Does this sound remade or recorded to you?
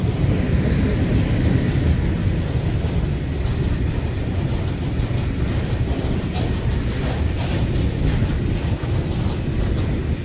recorded